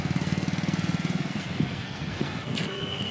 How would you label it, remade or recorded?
remade